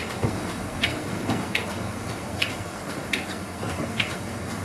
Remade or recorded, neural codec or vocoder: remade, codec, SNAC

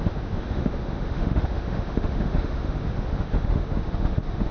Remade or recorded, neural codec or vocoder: remade, autoencoder, DAC-VAE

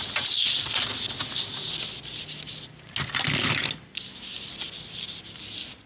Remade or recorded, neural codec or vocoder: recorded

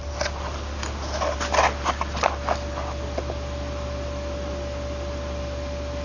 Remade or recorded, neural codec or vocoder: recorded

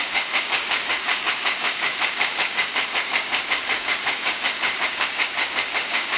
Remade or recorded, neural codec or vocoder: remade, codec, DAC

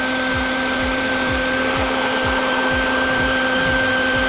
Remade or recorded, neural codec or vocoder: remade, vocoder, BigVGAN v2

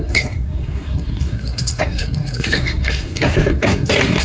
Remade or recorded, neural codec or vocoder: remade, codec, SNAC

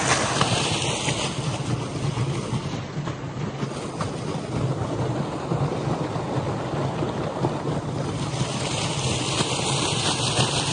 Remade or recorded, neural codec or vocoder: recorded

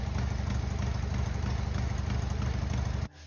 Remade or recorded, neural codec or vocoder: recorded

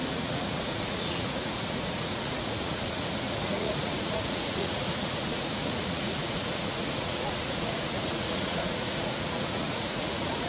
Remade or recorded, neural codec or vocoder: remade, vocoder, Vocos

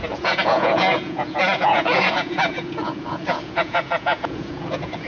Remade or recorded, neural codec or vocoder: remade, vocoder, Vocos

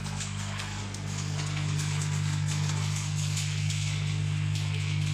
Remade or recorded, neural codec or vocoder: remade, codec, SNAC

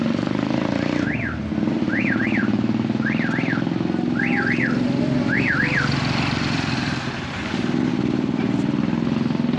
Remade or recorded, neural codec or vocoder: recorded